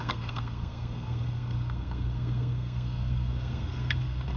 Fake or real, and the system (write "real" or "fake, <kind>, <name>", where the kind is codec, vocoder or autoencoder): fake, codec, SNAC